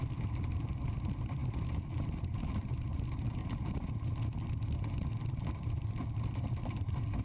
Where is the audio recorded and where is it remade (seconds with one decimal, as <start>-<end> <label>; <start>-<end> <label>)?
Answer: 0.0-3.4 remade; 3.4-5.0 recorded; 5.0-7.2 remade